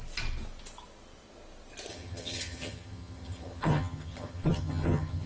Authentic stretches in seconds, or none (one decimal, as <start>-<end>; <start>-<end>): 0.0-1.9